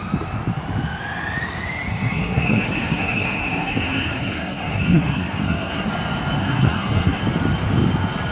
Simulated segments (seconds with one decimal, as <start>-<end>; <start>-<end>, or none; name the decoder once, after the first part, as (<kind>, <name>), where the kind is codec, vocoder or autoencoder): 1.9-5.9 (codec, SNAC); 6.4-7.2